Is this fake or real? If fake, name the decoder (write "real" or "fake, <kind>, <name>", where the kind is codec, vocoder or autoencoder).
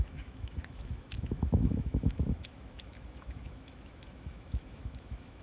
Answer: fake, autoencoder, DAC-VAE